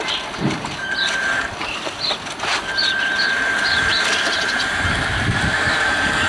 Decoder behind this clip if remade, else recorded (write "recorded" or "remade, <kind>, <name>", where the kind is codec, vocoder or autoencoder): remade, vocoder, BigVGAN v2